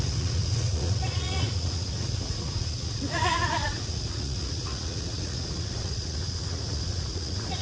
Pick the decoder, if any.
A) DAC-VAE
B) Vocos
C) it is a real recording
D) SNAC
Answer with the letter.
B